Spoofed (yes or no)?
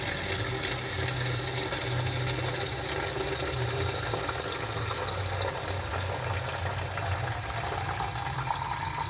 no